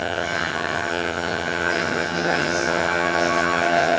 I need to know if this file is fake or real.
fake